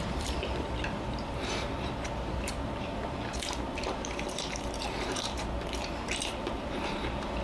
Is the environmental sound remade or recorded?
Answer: remade